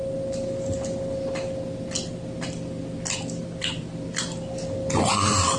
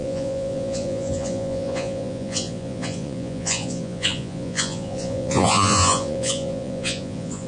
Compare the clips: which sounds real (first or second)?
first